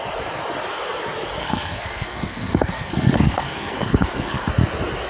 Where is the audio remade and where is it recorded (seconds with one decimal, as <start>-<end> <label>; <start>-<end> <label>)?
0.0-1.4 recorded; 1.4-4.5 remade; 4.5-5.1 recorded

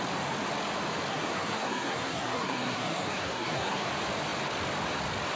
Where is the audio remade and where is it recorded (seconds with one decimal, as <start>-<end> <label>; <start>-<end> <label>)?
0.0-1.1 recorded; 1.1-3.9 remade; 3.9-5.4 recorded

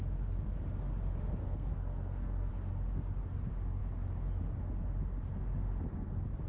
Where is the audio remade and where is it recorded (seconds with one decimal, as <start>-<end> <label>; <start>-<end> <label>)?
0.0-1.4 recorded; 1.4-2.5 remade; 2.5-6.5 recorded